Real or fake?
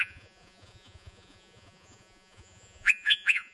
fake